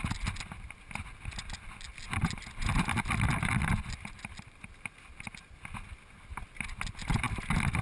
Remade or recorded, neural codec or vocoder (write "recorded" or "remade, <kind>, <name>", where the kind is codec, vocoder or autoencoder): recorded